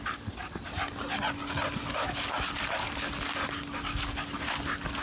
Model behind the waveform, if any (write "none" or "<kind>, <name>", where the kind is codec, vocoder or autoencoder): none